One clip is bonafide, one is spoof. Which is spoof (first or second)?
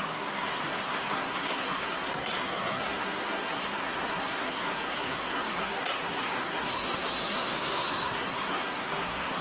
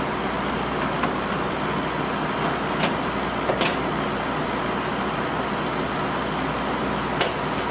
first